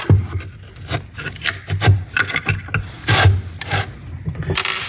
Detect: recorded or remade recorded